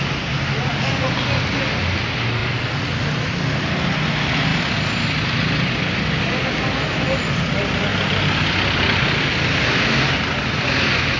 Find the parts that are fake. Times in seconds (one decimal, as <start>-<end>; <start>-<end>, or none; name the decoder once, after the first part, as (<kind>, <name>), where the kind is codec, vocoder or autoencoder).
none

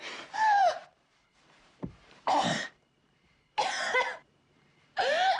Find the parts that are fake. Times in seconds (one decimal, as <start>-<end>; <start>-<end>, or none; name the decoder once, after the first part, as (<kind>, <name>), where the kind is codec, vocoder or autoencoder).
0.6-3.5 (vocoder, BigVGAN v2); 4.2-5.0

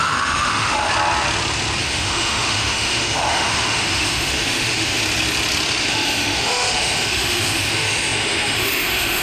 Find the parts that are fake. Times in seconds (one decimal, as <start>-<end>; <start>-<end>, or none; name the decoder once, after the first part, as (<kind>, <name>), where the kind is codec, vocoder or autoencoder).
0.0-0.9 (autoencoder, DAC-VAE); 1.8-5.0; 5.8-9.2

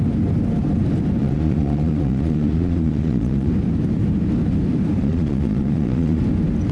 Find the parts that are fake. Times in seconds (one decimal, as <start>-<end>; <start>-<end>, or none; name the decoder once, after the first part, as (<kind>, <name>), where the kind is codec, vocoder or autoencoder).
1.2-3.5 (vocoder, Vocos); 5.0-6.2

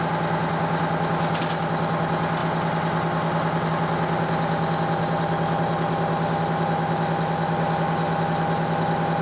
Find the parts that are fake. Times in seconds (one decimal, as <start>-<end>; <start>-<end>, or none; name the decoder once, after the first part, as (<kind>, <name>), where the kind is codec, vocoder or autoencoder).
none

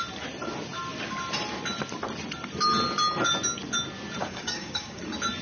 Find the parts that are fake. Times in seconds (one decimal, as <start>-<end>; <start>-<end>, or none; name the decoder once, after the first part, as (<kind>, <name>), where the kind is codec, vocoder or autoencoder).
4.2-5.0 (codec, DAC)